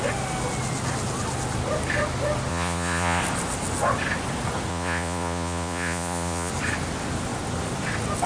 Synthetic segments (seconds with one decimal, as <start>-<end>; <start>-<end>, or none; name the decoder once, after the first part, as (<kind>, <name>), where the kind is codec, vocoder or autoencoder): 2.5-3.2 (vocoder, Vocos); 4.7-6.5